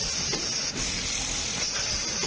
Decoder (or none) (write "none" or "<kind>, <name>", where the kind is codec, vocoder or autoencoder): none